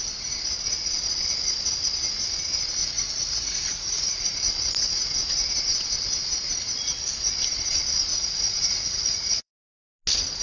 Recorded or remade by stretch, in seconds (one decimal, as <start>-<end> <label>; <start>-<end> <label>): 0.0-2.8 recorded; 2.8-4.2 remade; 4.2-8.1 recorded; 8.1-9.5 remade; 9.5-10.4 recorded